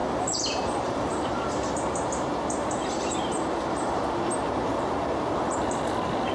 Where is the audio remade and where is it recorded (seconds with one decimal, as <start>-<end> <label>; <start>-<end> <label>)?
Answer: 0.0-1.7 remade; 1.7-2.8 recorded; 2.8-4.0 remade; 4.0-6.3 recorded